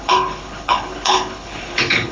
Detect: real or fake fake